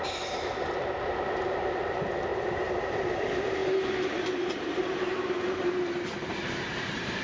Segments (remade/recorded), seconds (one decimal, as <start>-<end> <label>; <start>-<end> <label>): 0.0-2.3 remade; 2.3-3.0 recorded; 3.0-7.2 remade